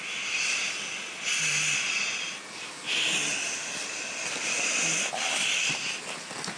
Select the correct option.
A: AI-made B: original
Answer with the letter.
B